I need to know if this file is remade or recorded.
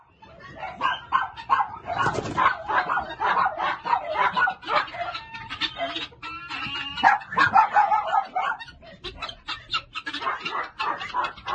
recorded